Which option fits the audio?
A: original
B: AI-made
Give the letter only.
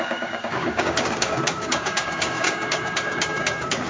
B